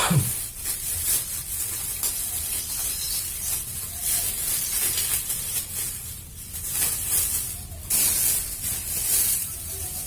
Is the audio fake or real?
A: real